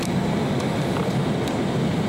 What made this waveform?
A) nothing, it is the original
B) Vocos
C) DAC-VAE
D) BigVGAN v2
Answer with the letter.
A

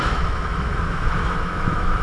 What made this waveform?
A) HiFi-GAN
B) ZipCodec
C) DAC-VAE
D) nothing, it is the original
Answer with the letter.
C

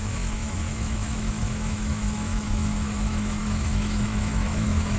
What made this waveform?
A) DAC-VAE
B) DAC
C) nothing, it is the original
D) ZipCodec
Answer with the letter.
A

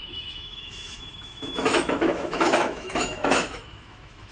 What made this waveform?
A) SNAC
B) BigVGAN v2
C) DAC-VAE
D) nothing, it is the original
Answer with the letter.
C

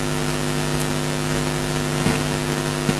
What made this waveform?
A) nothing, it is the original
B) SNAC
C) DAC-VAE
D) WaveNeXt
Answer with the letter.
A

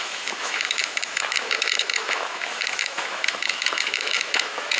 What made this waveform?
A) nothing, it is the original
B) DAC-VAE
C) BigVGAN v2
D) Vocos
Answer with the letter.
B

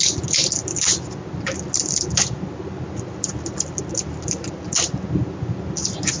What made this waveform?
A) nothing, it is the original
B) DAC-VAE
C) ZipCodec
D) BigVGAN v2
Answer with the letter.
A